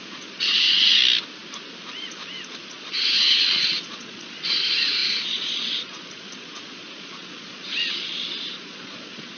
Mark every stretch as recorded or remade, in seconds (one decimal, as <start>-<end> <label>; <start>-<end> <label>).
0.0-1.0 remade; 1.0-1.9 recorded; 1.9-9.4 remade

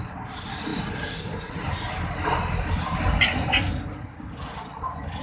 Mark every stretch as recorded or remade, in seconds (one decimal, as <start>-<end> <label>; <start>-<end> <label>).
0.0-5.2 recorded